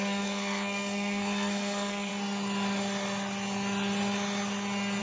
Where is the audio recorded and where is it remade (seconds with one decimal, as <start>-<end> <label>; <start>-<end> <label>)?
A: 0.0-2.1 remade; 2.1-5.0 recorded